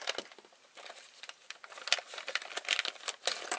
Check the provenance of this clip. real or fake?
real